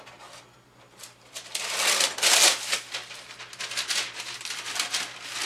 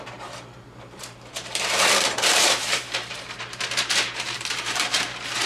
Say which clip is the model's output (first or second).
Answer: second